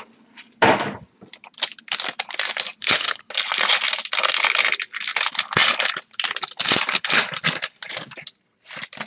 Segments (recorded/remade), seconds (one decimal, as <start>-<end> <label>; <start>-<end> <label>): 0.0-2.8 recorded; 2.8-3.3 remade; 3.3-9.1 recorded